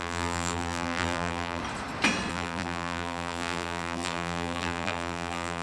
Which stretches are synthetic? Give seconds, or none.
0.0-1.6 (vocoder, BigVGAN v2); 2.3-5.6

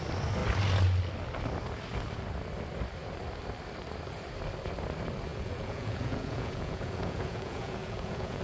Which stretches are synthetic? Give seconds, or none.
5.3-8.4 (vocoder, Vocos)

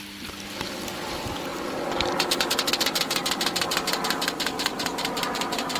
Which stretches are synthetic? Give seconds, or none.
4.7-5.8 (vocoder, BigVGAN v2)

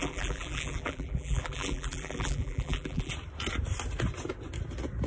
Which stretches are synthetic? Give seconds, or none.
0.0-3.1 (vocoder, BigVGAN v2)

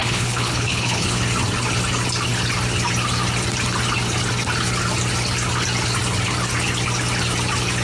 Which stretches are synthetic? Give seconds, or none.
0.0-1.2 (codec, HILCodec)